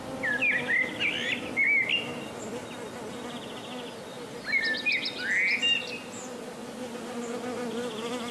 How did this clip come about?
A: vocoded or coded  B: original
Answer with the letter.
B